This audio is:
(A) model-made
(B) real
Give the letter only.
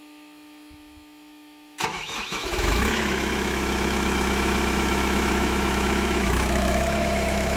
A